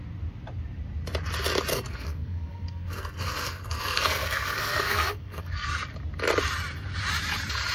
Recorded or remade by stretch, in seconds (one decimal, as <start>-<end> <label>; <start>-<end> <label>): 0.0-1.7 recorded; 1.7-5.7 remade; 5.7-7.7 recorded